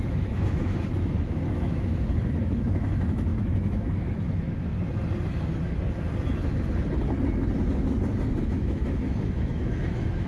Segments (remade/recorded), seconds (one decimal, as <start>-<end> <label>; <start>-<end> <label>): 0.0-4.7 remade; 4.7-8.4 recorded; 8.4-10.3 remade